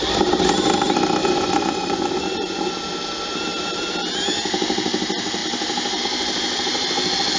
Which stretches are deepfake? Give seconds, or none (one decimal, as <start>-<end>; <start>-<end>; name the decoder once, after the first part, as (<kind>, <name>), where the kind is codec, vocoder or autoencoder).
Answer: 1.2-2.7 (vocoder, Vocos)